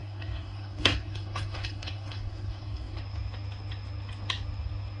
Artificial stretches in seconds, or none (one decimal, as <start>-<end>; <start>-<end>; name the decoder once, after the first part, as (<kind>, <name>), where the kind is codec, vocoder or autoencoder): 0.0-3.0 (codec, SNAC)